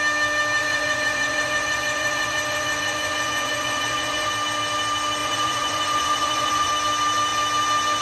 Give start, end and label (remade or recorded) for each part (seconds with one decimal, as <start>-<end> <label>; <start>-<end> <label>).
0.0-0.6 recorded; 0.6-4.3 remade; 4.3-5.2 recorded; 5.2-6.7 remade; 6.7-8.0 recorded